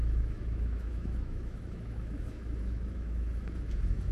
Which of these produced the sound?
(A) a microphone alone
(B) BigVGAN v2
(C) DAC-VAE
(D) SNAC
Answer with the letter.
C